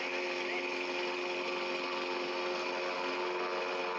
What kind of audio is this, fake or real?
real